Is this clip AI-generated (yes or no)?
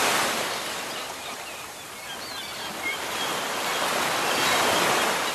no